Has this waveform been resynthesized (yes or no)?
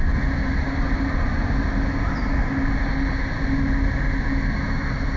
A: no